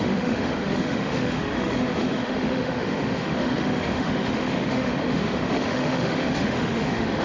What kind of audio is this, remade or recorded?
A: remade